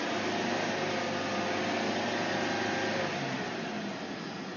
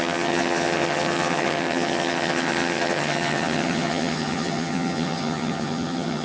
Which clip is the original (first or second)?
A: first